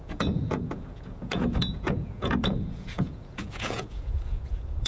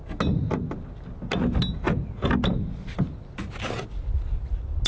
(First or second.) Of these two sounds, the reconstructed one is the first